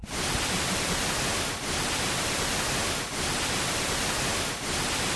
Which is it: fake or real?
real